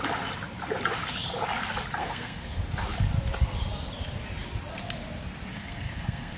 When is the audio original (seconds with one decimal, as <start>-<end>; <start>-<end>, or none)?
0.0-2.0; 2.6-5.5